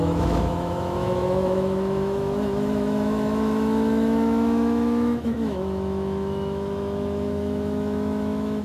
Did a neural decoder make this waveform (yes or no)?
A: yes